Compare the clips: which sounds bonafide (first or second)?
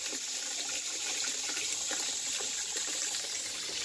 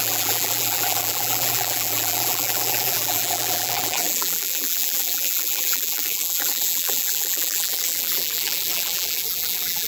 first